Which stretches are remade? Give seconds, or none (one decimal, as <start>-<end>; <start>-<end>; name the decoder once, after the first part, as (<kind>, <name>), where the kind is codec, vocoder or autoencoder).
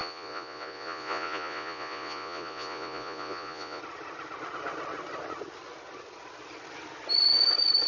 0.0-3.8 (vocoder, Vocos)